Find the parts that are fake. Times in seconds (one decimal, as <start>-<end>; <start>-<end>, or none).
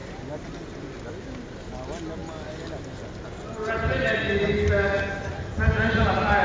none